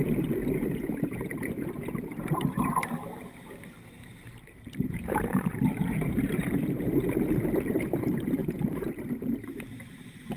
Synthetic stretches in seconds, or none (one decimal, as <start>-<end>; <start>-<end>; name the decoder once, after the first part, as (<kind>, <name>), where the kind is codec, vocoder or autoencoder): 0.0-10.4 (vocoder, BigVGAN v2)